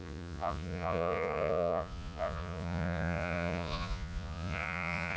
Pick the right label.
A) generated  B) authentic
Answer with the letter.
A